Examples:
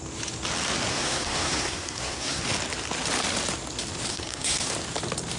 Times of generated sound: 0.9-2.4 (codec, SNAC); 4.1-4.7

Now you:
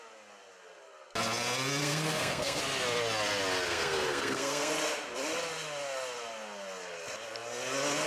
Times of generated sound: 1.8-2.6 (codec, SNAC); 3.7-4.7

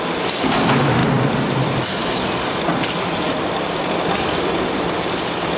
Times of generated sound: none